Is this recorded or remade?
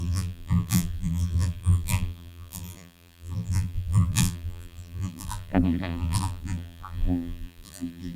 remade